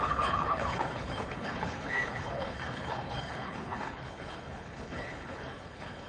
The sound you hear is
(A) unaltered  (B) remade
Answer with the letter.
B